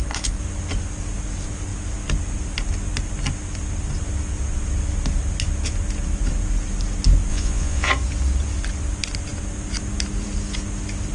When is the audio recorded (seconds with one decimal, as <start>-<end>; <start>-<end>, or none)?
0.0-7.3; 7.9-11.1